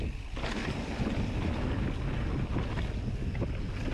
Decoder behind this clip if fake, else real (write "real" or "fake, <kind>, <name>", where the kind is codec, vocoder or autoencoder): real